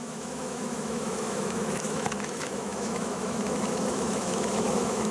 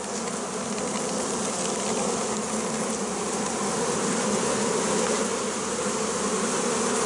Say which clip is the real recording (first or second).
second